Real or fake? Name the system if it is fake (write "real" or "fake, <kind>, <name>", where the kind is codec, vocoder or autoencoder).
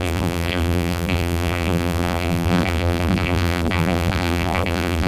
fake, vocoder, BigVGAN v2